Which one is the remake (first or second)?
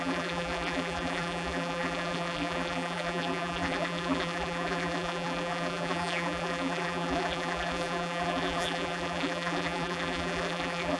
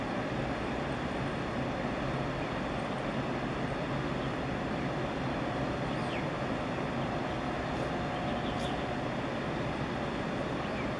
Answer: first